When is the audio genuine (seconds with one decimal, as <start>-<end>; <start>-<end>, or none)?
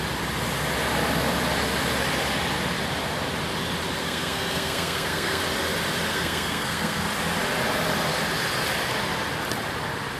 0.0-4.0; 5.4-6.1; 7.0-10.2